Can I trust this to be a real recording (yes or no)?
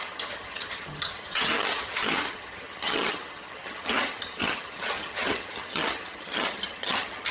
no